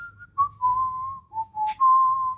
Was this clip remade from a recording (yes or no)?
yes